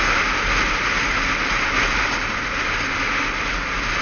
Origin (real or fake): real